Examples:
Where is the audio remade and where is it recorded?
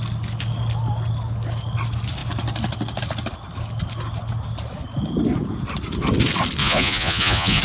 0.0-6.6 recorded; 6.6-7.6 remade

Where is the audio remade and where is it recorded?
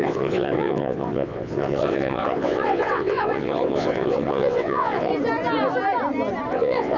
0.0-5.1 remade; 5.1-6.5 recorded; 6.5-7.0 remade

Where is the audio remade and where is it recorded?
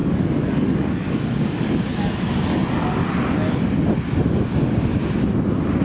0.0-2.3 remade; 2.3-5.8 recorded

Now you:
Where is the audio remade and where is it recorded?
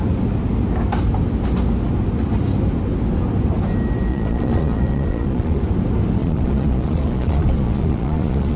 0.0-4.1 recorded; 4.1-5.6 remade; 5.6-6.2 recorded; 6.2-8.6 remade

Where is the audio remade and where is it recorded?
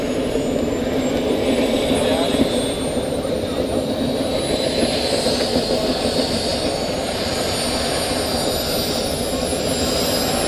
0.0-10.5 recorded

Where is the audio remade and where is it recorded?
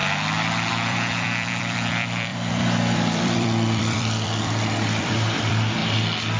0.0-0.7 recorded; 0.7-5.8 remade; 5.8-6.4 recorded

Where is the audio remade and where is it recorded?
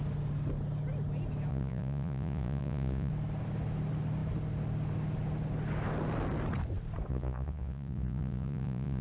0.0-1.5 recorded; 1.5-3.1 remade; 3.1-7.1 recorded; 7.1-9.0 remade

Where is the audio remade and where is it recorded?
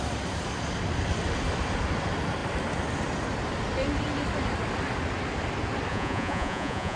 0.0-5.9 recorded; 5.9-7.0 remade